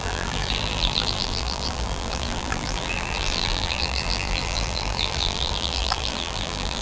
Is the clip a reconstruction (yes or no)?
yes